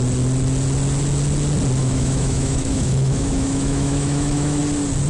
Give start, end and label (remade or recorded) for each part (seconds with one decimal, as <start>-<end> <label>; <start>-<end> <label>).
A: 0.0-1.8 recorded; 1.8-4.6 remade; 4.6-5.1 recorded